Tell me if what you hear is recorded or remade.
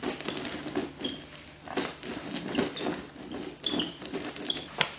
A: recorded